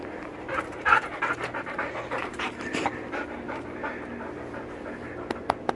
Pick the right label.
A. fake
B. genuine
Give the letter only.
A